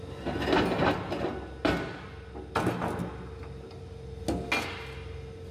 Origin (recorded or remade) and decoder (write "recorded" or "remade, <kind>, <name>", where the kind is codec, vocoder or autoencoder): recorded